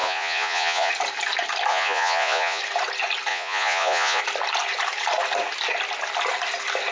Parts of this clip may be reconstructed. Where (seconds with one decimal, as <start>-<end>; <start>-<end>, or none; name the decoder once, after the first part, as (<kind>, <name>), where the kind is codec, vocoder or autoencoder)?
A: 0.0-0.9 (vocoder, Vocos); 1.7-2.6; 3.3-4.2